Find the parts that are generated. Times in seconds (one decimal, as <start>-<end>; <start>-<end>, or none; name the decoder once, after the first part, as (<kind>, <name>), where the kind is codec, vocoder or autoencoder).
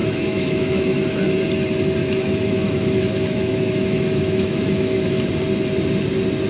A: 0.0-1.2 (autoencoder, DAC-VAE); 2.0-5.3